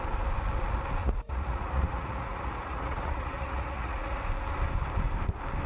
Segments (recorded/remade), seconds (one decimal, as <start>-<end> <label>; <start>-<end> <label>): 0.0-1.0 recorded; 1.0-4.2 remade; 4.2-5.7 recorded